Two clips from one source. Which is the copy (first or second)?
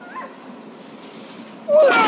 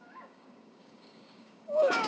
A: second